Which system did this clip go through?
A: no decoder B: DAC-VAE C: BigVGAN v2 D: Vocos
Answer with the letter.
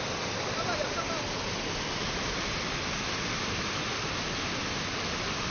A